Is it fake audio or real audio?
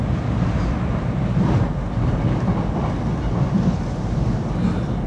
real